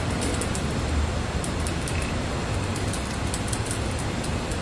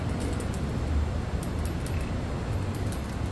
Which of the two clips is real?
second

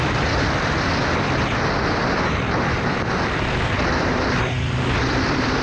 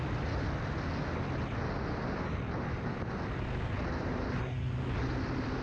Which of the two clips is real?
second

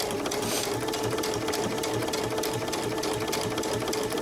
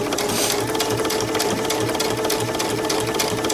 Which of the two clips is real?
second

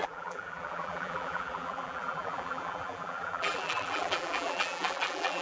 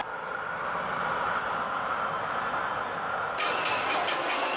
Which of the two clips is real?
second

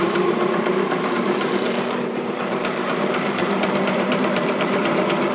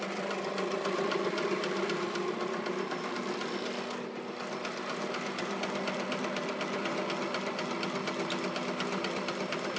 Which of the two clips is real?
second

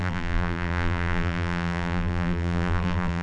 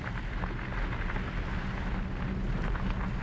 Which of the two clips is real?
second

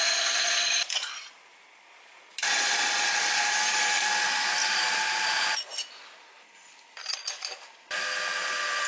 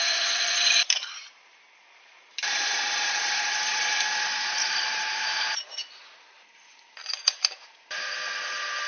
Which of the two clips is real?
first